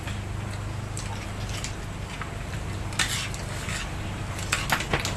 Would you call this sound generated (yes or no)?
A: no